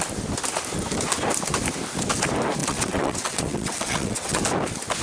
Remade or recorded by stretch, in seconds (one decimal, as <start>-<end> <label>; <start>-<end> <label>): 0.0-2.6 recorded; 2.6-4.4 remade; 4.4-5.0 recorded